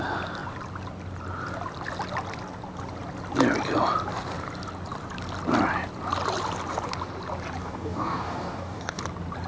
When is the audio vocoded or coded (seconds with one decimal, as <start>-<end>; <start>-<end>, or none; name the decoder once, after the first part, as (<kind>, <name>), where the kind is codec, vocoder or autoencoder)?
7.6-9.0 (codec, DAC)